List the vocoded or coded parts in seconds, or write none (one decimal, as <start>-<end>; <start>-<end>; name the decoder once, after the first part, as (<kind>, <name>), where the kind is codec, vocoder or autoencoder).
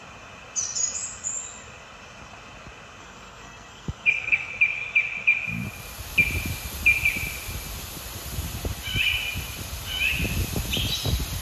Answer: 3.0-4.5 (codec, SNAC)